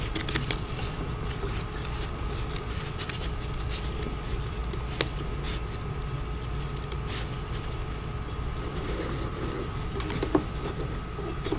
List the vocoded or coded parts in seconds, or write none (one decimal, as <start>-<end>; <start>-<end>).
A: 0.0-4.6; 7.2-11.6